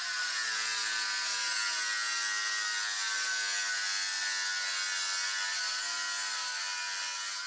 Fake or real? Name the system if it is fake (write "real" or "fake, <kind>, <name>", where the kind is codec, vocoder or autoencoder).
real